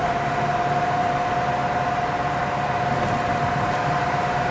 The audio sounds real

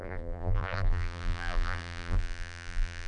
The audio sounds fake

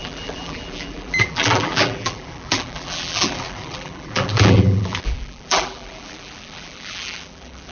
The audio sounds fake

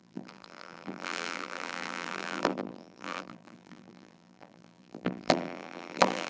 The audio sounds fake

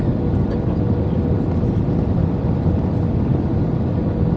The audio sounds real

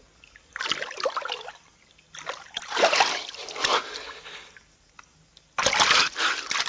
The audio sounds real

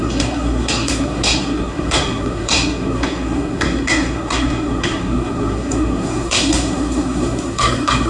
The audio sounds fake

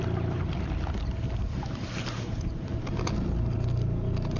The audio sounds real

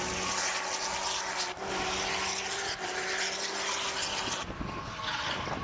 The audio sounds real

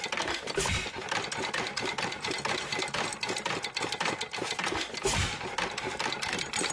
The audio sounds fake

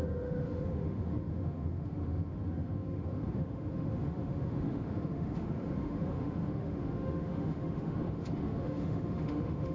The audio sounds fake